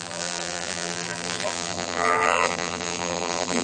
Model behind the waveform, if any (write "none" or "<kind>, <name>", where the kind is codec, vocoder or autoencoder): vocoder, BigVGAN v2